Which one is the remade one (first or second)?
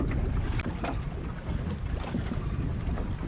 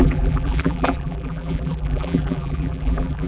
second